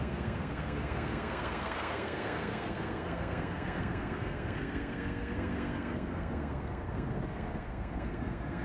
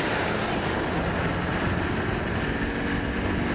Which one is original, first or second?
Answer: second